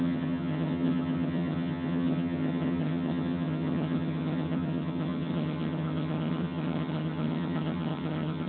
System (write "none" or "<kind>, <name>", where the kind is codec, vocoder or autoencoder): vocoder, HiFi-GAN